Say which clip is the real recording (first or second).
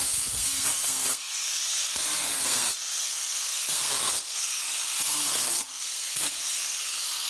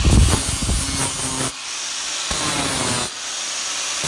second